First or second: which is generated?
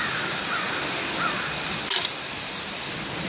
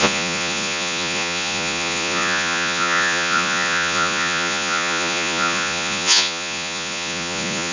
second